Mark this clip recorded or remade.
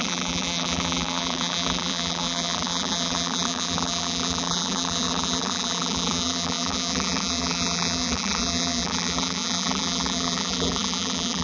remade